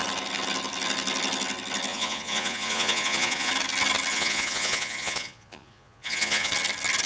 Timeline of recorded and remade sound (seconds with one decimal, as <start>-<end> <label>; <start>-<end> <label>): 0.0-1.9 recorded; 1.9-3.5 remade; 3.5-4.1 recorded; 4.1-6.5 remade; 6.5-7.1 recorded